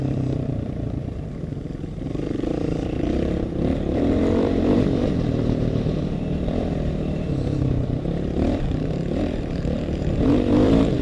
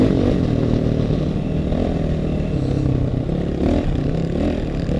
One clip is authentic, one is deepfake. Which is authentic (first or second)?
second